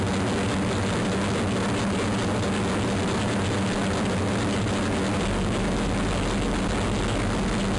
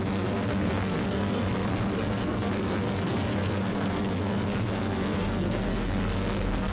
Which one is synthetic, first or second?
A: second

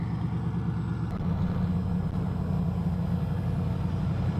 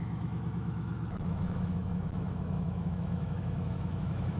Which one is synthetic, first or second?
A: second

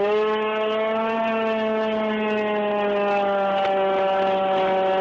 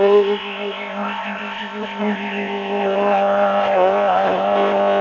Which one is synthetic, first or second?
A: second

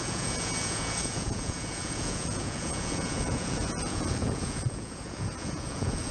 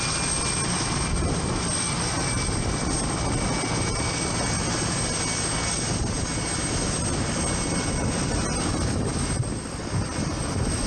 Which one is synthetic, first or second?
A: first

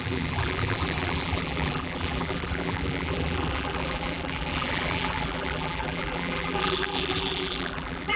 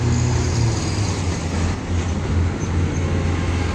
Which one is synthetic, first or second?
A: first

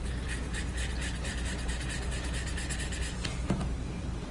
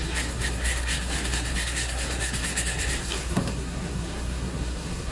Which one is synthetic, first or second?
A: second